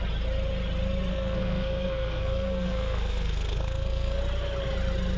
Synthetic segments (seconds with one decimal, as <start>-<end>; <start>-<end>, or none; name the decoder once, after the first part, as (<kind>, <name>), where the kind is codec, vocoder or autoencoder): 1.1-4.2 (codec, SNAC)